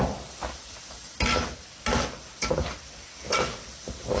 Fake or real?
real